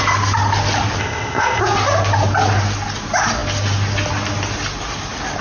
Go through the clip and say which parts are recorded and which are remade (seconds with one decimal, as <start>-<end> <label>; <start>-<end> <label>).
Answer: 0.0-1.0 recorded; 1.0-1.6 remade; 1.6-5.4 recorded